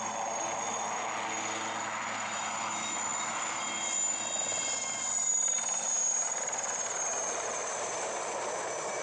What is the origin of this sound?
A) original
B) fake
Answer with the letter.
A